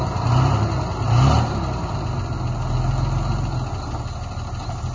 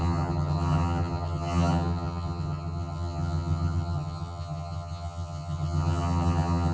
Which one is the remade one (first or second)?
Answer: second